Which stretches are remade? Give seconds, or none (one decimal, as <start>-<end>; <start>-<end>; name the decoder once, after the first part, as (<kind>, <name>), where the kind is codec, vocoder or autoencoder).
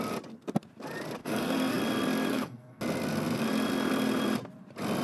1.2-1.8 (codec, SNAC); 2.3-2.8